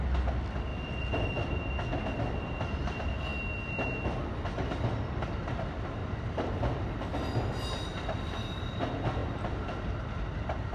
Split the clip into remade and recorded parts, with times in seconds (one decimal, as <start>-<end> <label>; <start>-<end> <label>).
0.0-0.7 recorded; 0.7-1.3 remade; 1.3-6.0 recorded; 6.0-7.2 remade; 7.2-9.2 recorded; 9.2-10.1 remade; 10.1-10.7 recorded

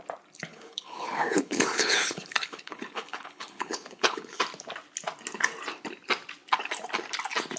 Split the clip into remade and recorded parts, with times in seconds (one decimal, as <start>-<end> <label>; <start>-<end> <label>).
0.0-0.5 recorded; 0.5-4.4 remade; 4.4-7.6 recorded

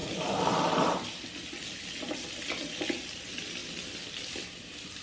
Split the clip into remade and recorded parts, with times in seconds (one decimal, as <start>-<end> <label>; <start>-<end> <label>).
0.0-1.0 remade; 1.0-3.6 recorded; 3.6-5.0 remade

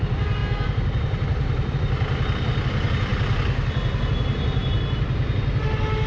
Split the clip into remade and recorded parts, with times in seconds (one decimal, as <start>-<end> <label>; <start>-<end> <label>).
0.0-6.1 recorded

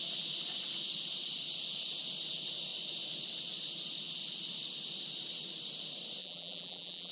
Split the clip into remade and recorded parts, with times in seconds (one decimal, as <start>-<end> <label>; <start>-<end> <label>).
0.0-6.2 recorded; 6.2-7.1 remade